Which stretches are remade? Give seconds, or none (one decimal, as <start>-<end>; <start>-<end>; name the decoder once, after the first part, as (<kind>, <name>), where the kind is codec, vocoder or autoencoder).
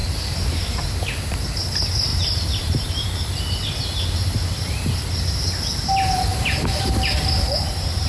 0.0-1.3 (vocoder, BigVGAN v2); 2.1-3.4; 6.3-8.1